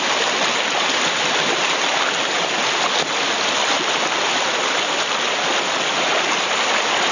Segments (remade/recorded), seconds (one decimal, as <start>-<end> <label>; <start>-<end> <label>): 0.0-7.1 recorded